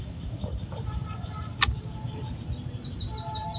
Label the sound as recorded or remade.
recorded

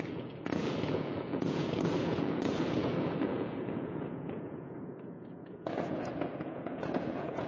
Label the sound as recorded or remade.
remade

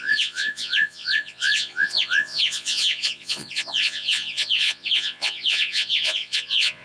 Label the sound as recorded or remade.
remade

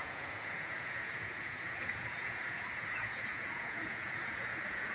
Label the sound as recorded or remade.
remade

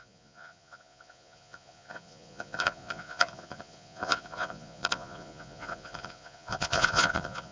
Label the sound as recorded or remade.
remade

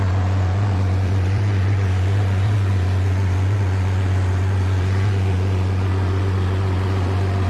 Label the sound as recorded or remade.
remade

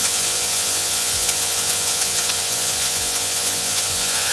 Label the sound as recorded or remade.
remade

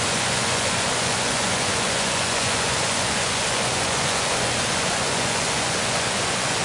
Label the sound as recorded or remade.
remade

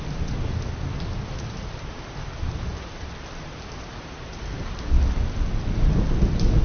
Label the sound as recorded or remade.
recorded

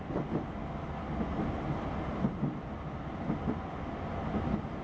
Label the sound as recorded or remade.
recorded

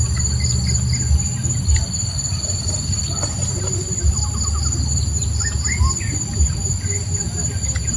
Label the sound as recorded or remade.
recorded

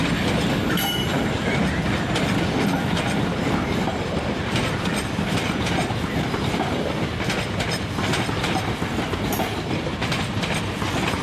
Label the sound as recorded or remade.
recorded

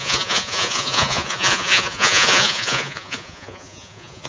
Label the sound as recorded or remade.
remade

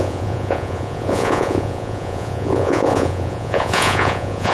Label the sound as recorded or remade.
remade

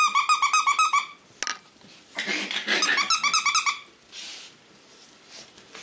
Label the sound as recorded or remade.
recorded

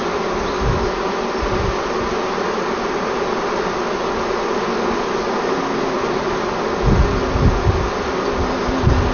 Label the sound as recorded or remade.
recorded